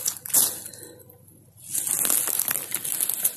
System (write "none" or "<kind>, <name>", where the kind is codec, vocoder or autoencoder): none